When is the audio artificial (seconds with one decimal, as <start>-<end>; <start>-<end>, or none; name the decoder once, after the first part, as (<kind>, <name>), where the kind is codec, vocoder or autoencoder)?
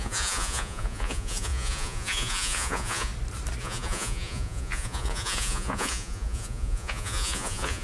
0.0-3.1 (vocoder, Vocos); 3.6-7.8